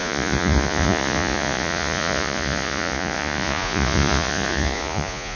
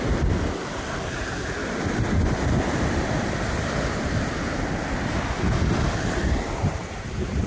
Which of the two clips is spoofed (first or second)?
first